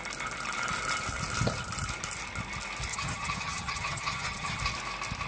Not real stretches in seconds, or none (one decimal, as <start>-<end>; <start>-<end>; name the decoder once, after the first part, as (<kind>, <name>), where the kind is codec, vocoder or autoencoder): 2.9-4.6 (vocoder, HiFi-GAN)